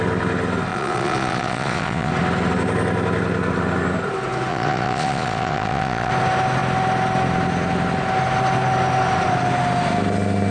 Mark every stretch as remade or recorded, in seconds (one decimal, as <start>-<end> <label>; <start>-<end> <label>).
0.0-0.7 recorded; 0.7-2.1 remade; 2.1-4.5 recorded; 4.5-6.1 remade; 6.1-10.5 recorded

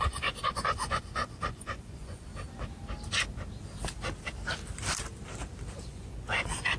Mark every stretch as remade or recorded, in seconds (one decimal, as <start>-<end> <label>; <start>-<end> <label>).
0.0-2.3 remade; 2.3-5.8 recorded; 5.8-6.8 remade

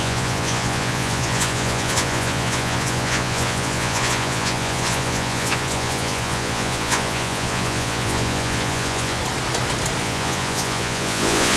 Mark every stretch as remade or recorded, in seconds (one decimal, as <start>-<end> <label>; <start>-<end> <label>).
0.0-9.2 remade; 9.2-10.0 recorded; 10.0-11.6 remade

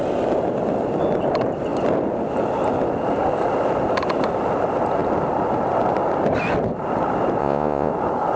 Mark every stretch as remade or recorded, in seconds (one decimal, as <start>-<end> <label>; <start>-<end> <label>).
0.0-7.4 recorded; 7.4-7.9 remade; 7.9-8.4 recorded

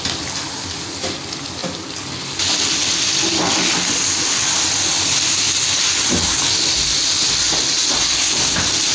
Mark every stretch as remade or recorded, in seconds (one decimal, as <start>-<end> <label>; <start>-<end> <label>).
0.0-8.9 recorded

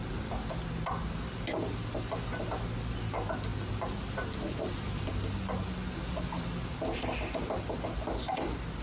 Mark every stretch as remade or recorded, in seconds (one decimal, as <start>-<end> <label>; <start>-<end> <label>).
0.0-8.8 recorded